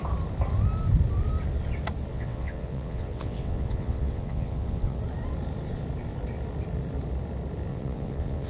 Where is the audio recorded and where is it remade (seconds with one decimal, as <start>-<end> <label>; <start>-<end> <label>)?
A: 0.0-2.1 recorded; 2.1-5.0 remade; 5.0-7.7 recorded; 7.7-8.5 remade